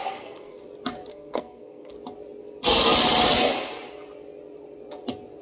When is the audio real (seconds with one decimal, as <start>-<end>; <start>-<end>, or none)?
0.6-1.1; 1.9-5.4